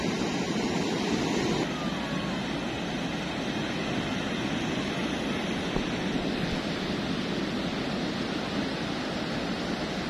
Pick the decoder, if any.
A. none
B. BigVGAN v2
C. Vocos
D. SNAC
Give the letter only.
A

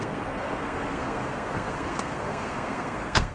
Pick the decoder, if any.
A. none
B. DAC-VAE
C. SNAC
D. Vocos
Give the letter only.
C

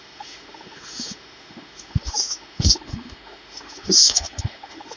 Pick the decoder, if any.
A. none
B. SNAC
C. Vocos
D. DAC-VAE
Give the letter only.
D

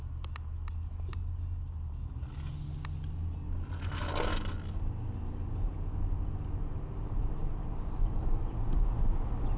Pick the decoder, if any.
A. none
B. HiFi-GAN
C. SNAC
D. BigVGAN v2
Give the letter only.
A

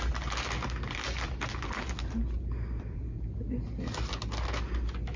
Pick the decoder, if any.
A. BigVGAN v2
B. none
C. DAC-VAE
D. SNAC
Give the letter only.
B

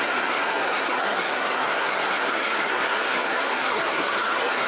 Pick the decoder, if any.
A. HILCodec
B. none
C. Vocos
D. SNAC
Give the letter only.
D